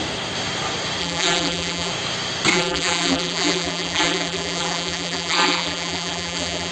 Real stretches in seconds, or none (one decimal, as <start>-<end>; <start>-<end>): 0.0-1.0; 1.9-2.5